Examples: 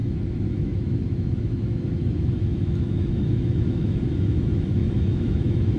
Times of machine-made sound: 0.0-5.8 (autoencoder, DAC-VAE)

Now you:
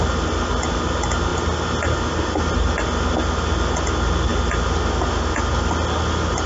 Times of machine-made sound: none

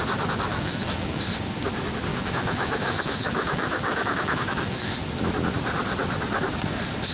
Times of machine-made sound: 0.5-1.2 (autoencoder, DAC-VAE); 2.1-4.9

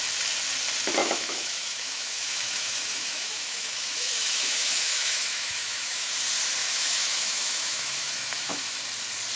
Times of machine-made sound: 1.0-6.1 (autoencoder, DAC-VAE); 6.6-8.8